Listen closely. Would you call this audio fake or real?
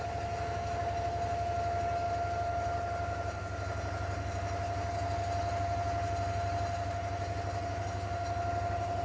real